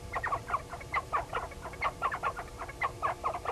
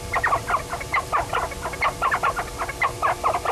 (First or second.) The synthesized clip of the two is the first